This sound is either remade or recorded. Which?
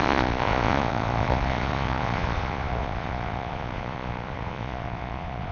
remade